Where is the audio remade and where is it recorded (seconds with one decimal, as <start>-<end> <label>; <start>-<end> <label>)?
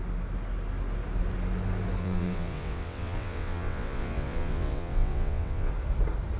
0.0-2.0 recorded; 2.0-5.7 remade; 5.7-6.4 recorded